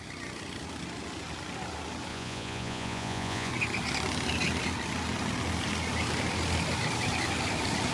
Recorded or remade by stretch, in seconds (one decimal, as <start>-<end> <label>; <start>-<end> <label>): 0.0-2.1 recorded; 2.1-3.5 remade; 3.5-7.9 recorded